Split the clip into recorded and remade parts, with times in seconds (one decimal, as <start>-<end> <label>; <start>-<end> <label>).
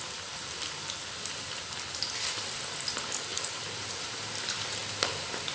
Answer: 0.0-3.3 recorded; 3.3-4.3 remade; 4.3-5.5 recorded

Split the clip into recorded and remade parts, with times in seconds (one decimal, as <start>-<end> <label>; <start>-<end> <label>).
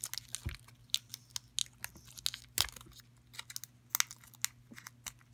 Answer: 0.0-5.3 recorded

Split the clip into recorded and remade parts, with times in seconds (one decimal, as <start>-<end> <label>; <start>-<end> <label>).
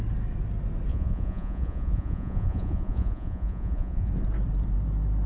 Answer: 0.0-0.9 recorded; 0.9-4.1 remade; 4.1-5.3 recorded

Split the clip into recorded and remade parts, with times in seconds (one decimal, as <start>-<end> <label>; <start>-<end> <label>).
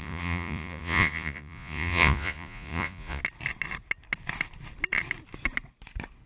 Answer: 0.0-3.2 remade; 3.2-6.3 recorded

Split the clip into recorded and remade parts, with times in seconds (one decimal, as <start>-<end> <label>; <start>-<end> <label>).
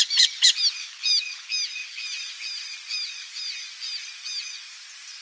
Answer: 0.0-5.2 recorded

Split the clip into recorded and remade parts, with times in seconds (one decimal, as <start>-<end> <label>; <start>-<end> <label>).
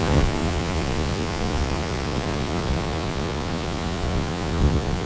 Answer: 0.0-5.1 remade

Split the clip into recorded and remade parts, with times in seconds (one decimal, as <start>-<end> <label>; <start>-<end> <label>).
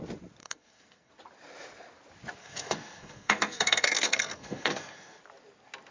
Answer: 0.0-0.4 recorded; 0.4-1.1 remade; 1.1-2.4 recorded; 2.4-5.2 remade; 5.2-5.9 recorded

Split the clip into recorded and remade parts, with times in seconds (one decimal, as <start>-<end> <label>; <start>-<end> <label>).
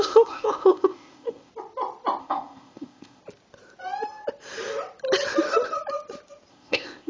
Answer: 0.0-1.5 remade; 1.5-2.2 recorded; 2.2-3.2 remade; 3.2-6.5 recorded; 6.5-7.1 remade